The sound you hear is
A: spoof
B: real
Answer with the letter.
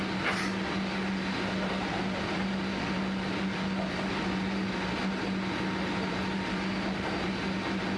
B